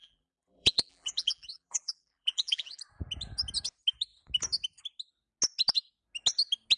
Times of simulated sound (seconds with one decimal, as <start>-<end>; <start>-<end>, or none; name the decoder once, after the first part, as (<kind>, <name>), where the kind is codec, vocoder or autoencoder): 0.0-2.8 (vocoder, BigVGAN v2)